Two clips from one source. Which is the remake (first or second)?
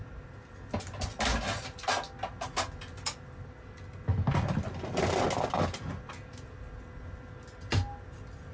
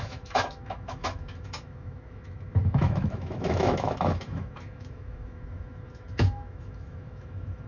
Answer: second